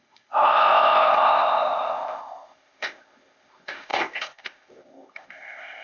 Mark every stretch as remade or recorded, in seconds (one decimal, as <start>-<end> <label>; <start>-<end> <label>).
0.0-5.8 remade